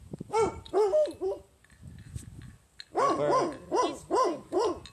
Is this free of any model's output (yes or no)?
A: yes